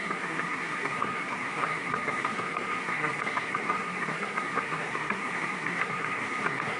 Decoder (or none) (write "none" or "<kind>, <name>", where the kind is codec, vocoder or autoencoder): codec, SNAC